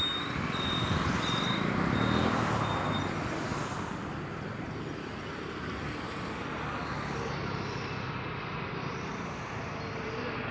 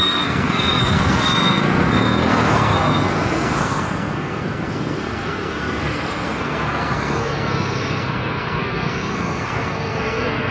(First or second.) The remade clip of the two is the second